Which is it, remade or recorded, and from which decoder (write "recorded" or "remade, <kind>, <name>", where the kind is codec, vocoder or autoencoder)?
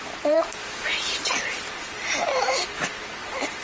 remade, vocoder, BigVGAN v2